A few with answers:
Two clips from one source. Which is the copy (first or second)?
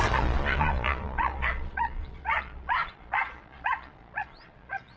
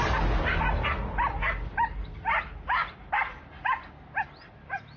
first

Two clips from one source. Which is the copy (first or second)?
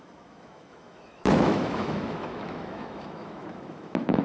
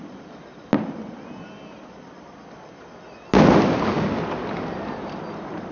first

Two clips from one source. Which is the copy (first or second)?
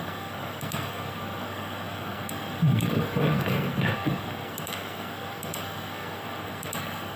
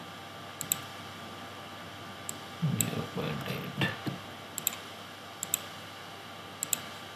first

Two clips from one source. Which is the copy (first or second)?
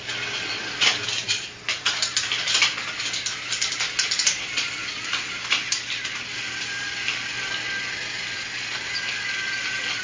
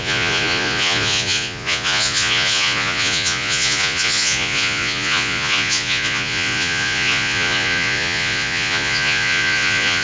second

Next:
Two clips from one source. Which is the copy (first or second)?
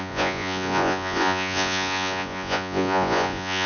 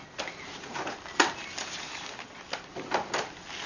first